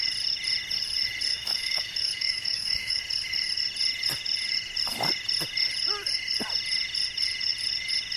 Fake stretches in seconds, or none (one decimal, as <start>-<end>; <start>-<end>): 1.3-3.0